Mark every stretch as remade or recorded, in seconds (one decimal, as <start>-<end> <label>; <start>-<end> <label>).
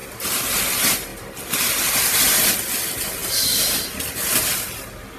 0.0-5.2 recorded